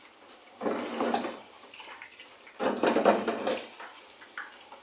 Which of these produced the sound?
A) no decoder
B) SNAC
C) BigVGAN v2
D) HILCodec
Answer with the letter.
A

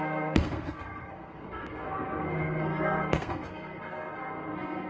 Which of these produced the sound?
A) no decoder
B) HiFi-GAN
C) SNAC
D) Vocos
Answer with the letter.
C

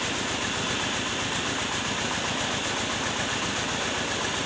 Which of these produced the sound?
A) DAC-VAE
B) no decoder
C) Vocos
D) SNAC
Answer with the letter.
B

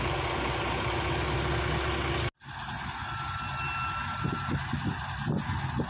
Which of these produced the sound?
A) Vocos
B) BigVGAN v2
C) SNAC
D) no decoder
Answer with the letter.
D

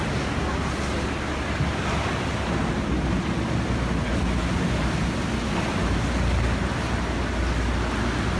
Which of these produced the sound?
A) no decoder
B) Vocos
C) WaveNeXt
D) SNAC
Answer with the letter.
A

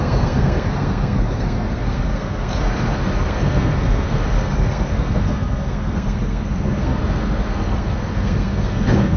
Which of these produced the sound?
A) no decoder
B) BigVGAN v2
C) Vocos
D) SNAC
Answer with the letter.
D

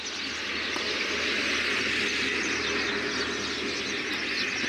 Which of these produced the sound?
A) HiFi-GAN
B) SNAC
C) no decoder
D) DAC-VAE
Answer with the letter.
C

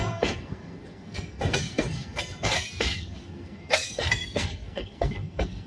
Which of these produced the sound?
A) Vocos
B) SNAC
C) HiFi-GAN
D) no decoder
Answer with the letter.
B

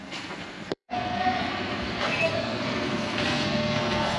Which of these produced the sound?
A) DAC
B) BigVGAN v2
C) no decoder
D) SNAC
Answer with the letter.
D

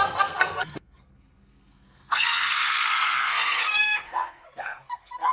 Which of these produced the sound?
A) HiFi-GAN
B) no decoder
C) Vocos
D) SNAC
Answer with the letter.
D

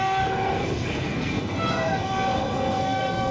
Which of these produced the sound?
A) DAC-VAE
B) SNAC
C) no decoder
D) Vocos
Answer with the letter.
B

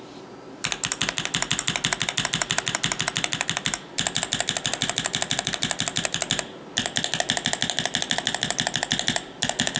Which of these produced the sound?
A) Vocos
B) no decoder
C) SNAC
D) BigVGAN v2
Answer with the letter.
B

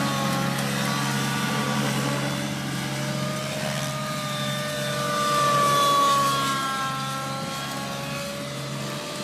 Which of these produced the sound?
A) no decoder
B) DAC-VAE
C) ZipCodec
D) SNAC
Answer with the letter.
A